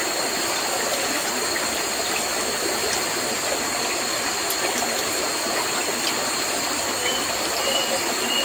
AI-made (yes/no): no